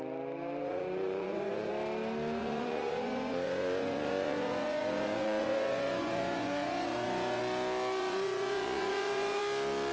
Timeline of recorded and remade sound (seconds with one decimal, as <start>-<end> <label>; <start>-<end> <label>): 0.0-0.6 recorded; 0.6-1.7 remade; 1.7-2.4 recorded; 2.4-7.4 remade; 7.4-8.0 recorded; 8.0-9.4 remade; 9.4-9.9 recorded